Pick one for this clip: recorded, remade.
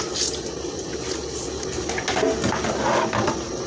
recorded